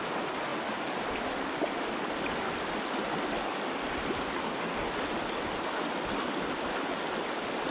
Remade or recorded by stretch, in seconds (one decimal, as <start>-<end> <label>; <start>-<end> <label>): 0.0-7.7 recorded

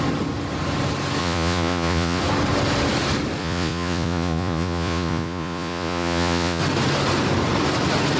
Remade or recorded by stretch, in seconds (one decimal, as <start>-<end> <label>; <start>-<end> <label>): 0.0-1.2 recorded; 1.2-2.2 remade; 2.2-3.4 recorded; 3.4-6.6 remade; 6.6-8.2 recorded